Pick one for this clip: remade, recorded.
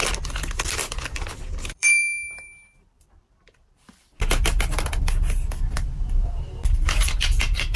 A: remade